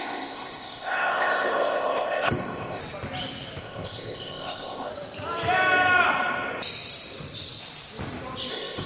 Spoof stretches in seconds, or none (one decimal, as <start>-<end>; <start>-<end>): 0.0-2.8; 3.6-4.9; 8.5-8.9